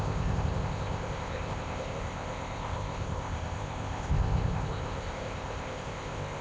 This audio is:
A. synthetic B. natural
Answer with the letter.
A